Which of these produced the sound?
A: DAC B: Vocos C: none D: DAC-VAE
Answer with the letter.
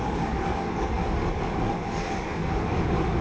A